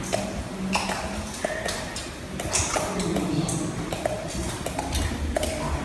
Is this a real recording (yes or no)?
yes